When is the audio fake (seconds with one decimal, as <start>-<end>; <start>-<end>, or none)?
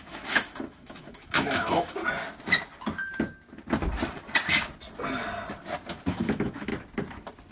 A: 0.0-2.0; 6.1-6.7